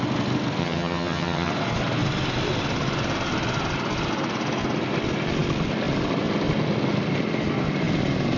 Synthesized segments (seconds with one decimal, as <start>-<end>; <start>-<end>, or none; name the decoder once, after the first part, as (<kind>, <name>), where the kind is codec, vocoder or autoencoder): 0.6-1.5 (vocoder, HiFi-GAN)